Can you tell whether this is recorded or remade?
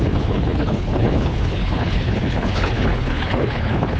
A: remade